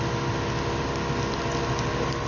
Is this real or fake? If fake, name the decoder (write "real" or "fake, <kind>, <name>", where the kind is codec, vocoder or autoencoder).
real